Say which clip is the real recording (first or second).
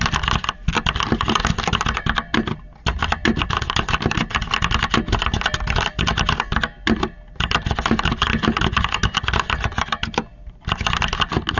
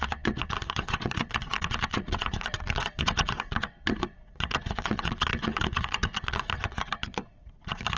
first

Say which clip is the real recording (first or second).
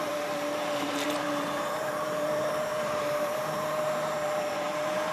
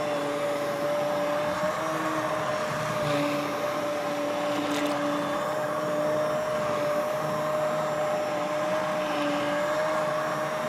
second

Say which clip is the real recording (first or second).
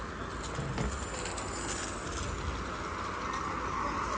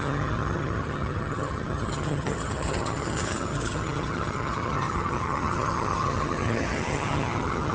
first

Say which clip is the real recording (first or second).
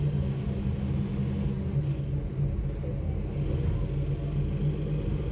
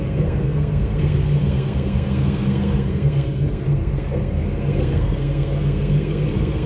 first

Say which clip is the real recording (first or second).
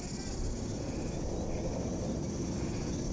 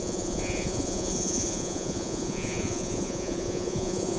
first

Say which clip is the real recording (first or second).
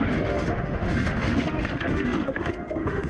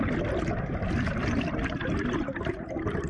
second